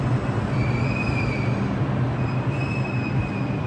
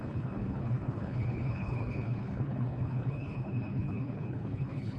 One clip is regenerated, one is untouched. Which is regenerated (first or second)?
second